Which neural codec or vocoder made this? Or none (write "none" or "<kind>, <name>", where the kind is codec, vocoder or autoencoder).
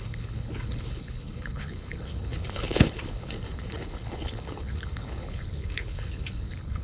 codec, HILCodec